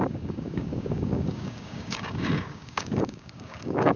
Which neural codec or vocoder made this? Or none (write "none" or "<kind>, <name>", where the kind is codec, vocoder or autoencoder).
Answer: codec, DAC